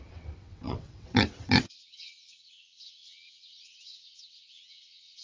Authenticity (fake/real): fake